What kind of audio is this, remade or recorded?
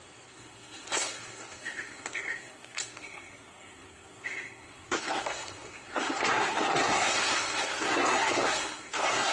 remade